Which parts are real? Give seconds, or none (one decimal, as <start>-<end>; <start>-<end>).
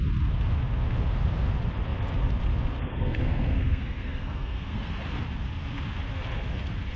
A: 0.0-2.9; 4.9-7.0